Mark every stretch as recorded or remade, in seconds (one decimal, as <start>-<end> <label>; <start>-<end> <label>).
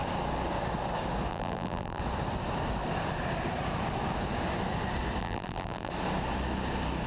0.0-1.3 recorded; 1.3-2.0 remade; 2.0-5.2 recorded; 5.2-5.9 remade; 5.9-7.1 recorded